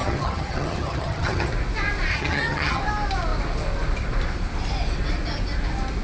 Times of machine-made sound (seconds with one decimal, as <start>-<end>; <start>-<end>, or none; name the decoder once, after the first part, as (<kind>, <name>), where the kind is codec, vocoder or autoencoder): 0.0-1.5 (vocoder, HiFi-GAN); 2.1-2.8